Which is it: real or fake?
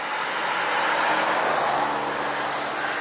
real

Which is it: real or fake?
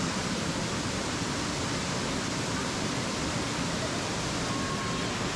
real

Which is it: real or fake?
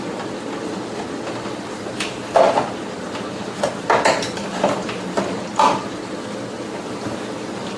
real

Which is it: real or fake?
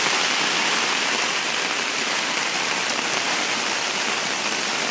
fake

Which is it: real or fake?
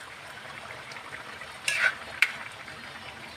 fake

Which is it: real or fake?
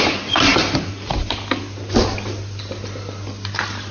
real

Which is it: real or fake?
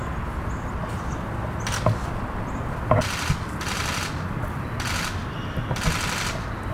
real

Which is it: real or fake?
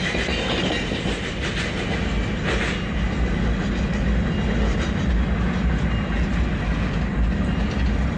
real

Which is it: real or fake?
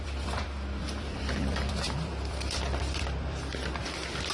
fake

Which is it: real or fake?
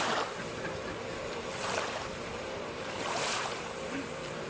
fake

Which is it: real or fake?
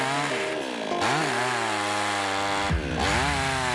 real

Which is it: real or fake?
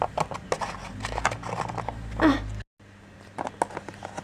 real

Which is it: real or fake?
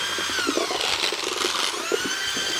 real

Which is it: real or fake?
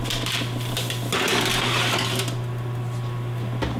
real